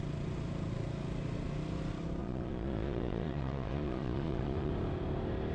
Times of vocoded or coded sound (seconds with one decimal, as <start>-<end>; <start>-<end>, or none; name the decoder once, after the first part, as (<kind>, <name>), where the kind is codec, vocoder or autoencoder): 2.2-4.7 (vocoder, Vocos)